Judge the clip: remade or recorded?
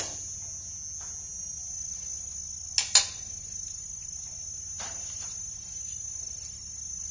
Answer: recorded